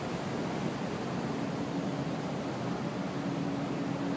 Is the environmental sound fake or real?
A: real